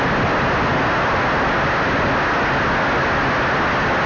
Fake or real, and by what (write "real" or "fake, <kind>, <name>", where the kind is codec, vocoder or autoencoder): real